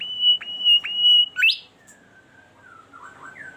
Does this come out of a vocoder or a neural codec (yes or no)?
no